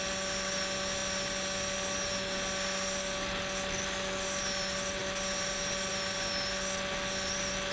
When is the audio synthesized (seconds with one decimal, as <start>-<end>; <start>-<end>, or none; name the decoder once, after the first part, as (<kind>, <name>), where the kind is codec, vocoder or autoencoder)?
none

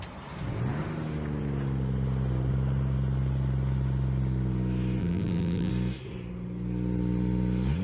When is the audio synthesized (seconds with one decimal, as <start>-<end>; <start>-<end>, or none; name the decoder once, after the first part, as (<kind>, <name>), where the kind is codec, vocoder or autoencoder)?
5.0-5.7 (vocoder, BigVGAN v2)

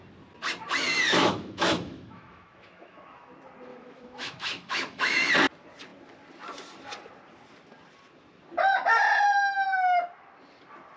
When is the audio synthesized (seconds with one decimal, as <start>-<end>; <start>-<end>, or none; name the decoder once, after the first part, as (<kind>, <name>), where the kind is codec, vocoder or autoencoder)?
1.1-3.3 (autoencoder, DAC-VAE); 3.7-5.3

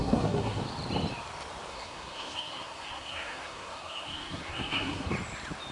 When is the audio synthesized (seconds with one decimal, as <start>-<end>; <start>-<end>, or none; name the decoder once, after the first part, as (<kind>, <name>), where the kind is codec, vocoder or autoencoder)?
0.0-0.6 (codec, SNAC); 1.7-5.1

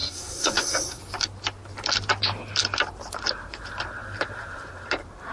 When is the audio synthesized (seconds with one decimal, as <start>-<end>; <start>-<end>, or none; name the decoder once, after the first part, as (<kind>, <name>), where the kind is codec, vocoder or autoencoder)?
0.0-1.0 (codec, SNAC)

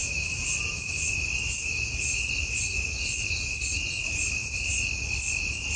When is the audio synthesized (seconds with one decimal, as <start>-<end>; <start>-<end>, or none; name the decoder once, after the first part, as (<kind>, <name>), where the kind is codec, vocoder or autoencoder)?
0.0-3.5 (vocoder, BigVGAN v2); 4.0-4.7

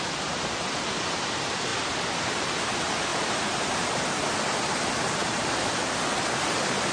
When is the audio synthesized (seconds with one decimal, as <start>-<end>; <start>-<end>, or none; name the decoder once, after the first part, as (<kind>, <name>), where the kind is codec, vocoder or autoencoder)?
1.7-2.4 (vocoder, BigVGAN v2); 3.1-4.0

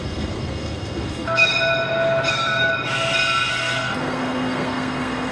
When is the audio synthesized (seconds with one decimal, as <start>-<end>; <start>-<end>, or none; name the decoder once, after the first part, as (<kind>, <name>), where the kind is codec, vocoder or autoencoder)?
0.0-1.5 (codec, SNAC); 2.3-2.7; 3.5-5.3